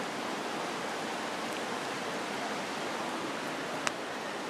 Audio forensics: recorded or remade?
recorded